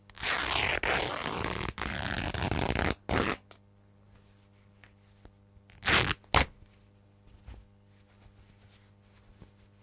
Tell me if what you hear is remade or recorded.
recorded